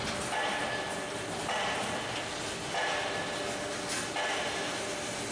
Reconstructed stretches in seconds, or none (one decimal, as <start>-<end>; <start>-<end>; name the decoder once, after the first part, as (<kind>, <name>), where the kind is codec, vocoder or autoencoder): none